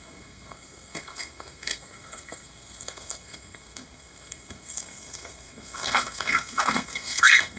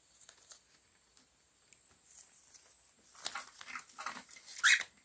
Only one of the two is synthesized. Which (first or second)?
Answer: first